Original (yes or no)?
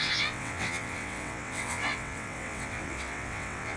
no